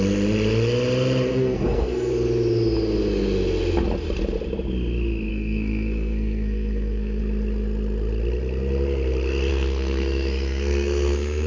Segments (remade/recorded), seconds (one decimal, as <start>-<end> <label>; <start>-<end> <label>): 0.0-1.3 recorded; 1.3-2.1 remade; 2.1-5.3 recorded; 5.3-7.2 remade; 7.2-9.5 recorded; 9.5-11.5 remade